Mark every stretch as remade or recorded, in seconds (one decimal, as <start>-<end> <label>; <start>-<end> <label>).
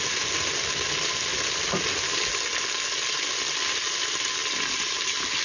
0.0-5.4 recorded